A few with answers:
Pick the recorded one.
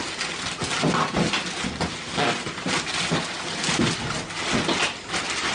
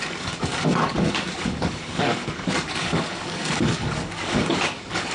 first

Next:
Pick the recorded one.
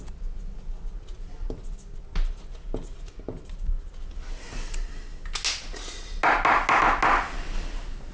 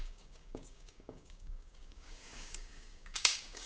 first